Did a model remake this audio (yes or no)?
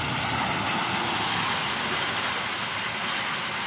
no